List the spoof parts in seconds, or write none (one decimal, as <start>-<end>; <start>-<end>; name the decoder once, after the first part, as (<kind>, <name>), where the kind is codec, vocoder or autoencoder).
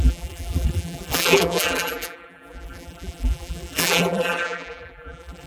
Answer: 0.0-5.5 (vocoder, BigVGAN v2)